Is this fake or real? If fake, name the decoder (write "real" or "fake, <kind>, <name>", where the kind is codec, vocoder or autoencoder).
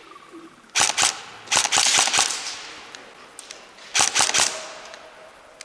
real